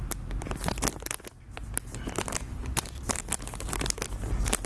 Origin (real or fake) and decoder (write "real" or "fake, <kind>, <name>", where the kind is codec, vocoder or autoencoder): real